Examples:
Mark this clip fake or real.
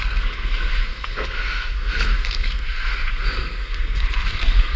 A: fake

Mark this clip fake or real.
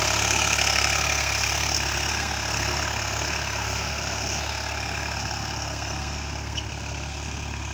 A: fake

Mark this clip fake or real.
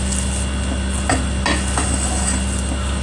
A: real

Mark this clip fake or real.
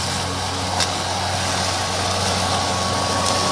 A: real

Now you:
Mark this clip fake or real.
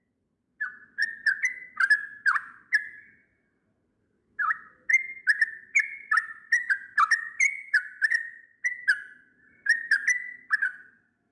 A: real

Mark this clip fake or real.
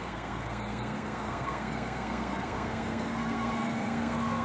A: fake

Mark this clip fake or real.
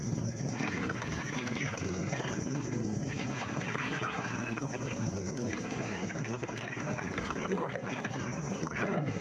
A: fake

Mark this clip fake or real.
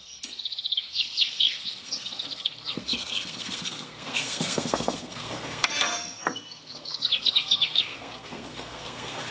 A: fake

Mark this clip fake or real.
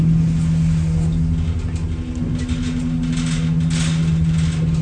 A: real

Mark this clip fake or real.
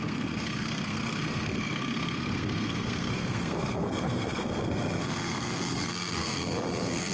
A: fake